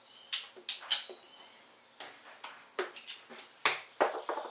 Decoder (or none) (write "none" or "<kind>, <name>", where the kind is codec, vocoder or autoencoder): none